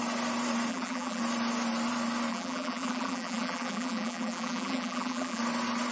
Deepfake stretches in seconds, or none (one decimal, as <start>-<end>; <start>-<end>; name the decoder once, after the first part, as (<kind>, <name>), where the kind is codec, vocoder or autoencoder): 0.7-1.2 (vocoder, BigVGAN v2); 2.3-5.4